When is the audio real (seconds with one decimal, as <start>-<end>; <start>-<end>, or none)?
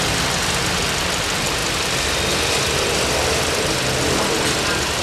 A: 0.0-5.0